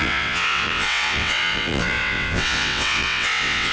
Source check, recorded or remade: remade